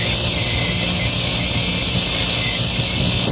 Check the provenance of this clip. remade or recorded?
recorded